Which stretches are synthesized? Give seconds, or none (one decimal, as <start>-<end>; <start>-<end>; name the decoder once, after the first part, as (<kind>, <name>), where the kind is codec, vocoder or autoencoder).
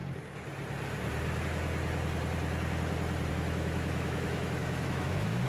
3.3-5.5 (autoencoder, DAC-VAE)